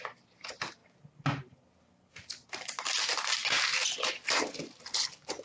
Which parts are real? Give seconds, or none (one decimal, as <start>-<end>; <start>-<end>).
0.8-2.1; 3.4-4.6